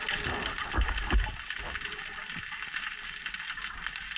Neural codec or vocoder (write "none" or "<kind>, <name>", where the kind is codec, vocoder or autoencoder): none